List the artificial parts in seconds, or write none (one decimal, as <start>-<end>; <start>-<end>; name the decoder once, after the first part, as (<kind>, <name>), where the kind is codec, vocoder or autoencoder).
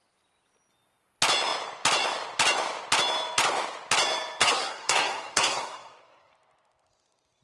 4.4-6.3 (codec, SNAC)